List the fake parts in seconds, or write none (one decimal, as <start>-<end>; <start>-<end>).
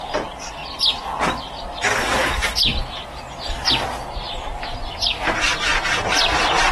none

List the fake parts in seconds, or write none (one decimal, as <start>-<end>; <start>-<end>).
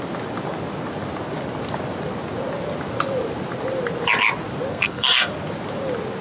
4.7-5.3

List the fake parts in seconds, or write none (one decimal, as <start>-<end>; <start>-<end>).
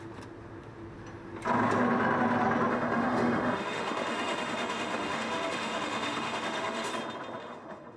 2.7-6.9; 7.4-8.0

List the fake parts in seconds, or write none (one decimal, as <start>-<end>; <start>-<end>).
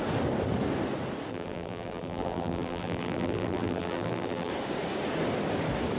1.3-4.5